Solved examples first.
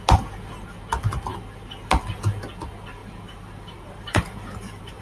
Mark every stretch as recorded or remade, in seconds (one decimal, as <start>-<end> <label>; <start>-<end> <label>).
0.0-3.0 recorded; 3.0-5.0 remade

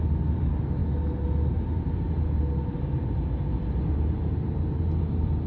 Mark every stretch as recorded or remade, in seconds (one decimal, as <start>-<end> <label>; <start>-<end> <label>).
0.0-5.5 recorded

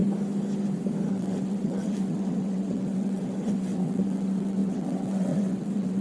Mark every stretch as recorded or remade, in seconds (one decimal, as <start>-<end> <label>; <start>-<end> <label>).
0.0-1.1 recorded; 1.1-6.0 remade

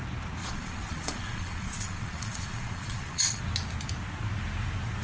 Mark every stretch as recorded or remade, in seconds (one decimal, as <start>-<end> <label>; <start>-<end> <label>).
0.0-0.4 recorded; 0.4-3.4 remade; 3.4-5.0 recorded